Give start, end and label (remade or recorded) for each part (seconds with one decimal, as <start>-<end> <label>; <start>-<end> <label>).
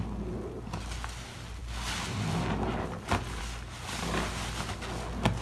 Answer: 0.0-5.4 recorded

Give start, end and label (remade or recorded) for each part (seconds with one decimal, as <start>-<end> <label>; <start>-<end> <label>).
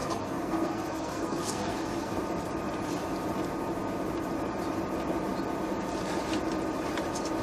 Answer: 0.0-2.2 remade; 2.2-7.4 recorded